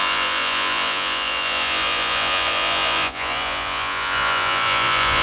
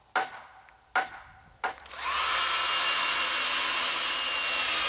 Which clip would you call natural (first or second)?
second